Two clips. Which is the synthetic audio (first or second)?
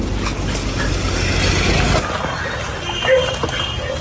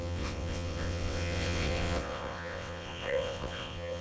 second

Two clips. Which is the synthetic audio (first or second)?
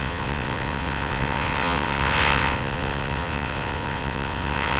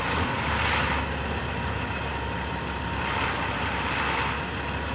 first